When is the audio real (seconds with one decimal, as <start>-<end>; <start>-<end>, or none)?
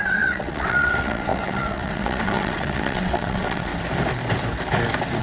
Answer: 3.7-5.2